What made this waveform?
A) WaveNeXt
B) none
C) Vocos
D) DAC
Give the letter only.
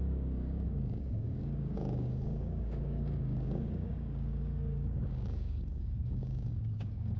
D